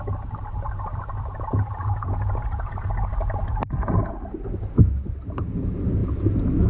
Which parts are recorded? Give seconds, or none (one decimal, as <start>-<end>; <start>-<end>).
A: 0.0-6.7